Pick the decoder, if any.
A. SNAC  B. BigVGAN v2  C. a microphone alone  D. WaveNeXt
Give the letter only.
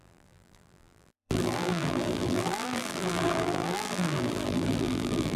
B